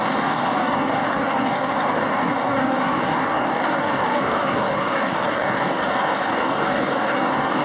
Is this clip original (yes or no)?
no